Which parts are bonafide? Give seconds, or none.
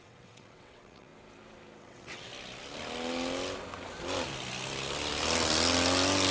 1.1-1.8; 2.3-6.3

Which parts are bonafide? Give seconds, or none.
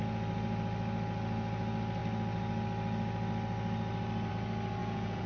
0.0-4.8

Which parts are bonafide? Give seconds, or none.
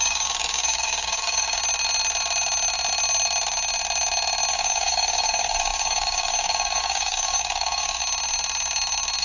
1.6-4.5; 8.0-9.2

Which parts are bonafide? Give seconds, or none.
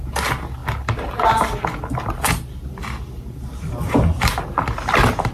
0.0-5.3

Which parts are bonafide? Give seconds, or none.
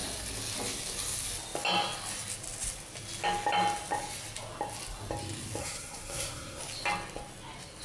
0.0-5.6; 6.6-7.8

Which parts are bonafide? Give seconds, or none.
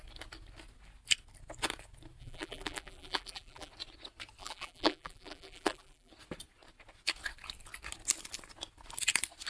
0.0-2.2; 3.7-4.4; 6.1-9.5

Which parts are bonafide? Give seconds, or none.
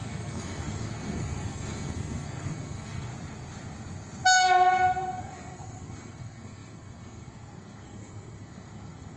3.1-5.2